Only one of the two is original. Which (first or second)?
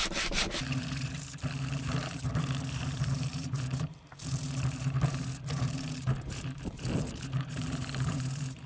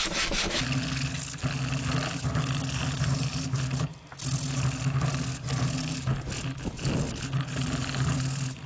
second